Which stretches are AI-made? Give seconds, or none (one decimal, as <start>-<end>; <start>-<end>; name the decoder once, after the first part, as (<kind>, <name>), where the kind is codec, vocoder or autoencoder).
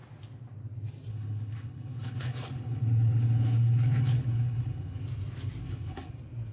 1.1-5.0 (codec, HILCodec); 5.6-6.1